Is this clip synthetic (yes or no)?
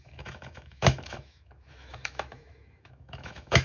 yes